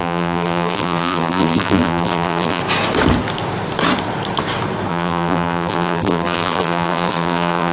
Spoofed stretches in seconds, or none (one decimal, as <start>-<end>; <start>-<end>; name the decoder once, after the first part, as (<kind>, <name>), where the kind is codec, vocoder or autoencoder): 0.0-2.6 (vocoder, BigVGAN v2); 4.9-7.7